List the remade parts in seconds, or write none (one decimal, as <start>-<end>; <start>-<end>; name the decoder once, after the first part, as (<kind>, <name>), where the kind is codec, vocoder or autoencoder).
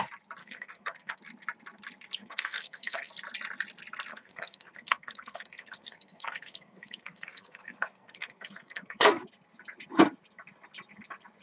0.4-1.2 (codec, SNAC); 2.2-3.1; 4.1-9.1